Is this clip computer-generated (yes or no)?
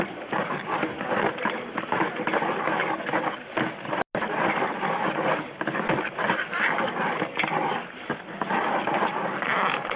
no